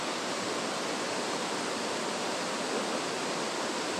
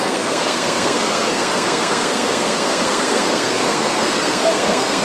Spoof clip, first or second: second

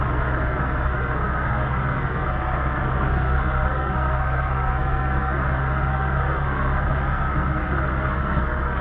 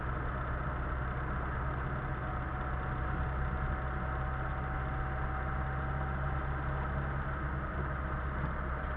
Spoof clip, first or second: first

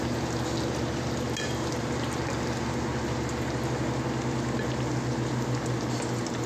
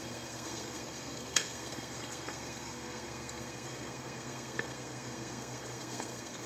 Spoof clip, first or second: second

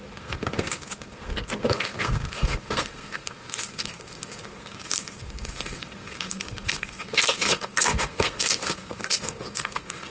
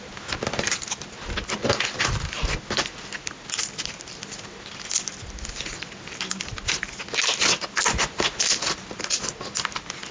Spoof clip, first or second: first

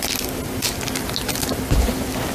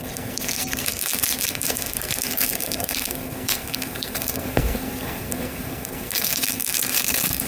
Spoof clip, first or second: second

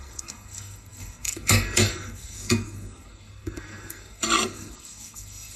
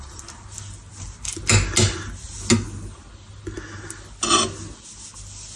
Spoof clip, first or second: first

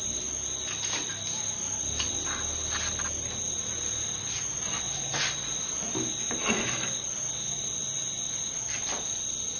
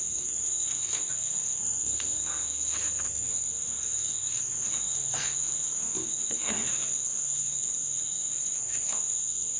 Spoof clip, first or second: second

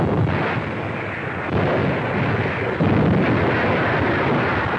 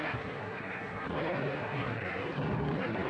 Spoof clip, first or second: second